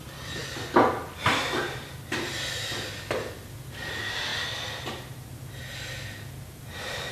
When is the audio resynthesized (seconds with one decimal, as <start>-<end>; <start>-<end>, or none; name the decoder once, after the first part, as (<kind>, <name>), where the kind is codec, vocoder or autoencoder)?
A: none